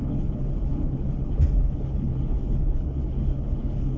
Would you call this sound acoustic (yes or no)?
no